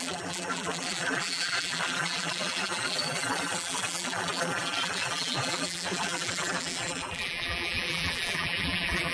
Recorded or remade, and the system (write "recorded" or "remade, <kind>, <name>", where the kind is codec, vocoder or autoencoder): remade, vocoder, BigVGAN v2